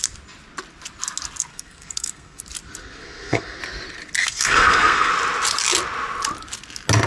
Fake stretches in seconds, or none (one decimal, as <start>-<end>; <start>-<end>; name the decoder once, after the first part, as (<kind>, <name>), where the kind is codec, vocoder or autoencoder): 1.5-2.4 (codec, SNAC); 2.8-3.6; 4.2-5.1